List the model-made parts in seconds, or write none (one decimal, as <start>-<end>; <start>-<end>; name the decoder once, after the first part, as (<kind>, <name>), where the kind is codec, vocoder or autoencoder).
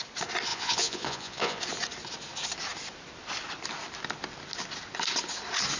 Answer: 0.5-1.6 (vocoder, Vocos)